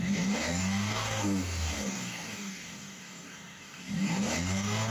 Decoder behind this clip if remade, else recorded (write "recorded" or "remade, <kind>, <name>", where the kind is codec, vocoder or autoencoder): remade, codec, DAC